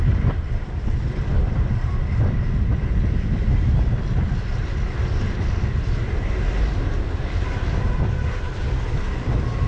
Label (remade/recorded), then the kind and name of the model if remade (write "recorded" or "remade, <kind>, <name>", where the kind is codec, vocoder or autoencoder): recorded